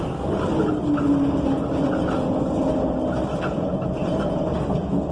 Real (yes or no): yes